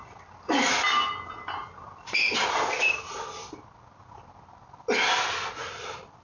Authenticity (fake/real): real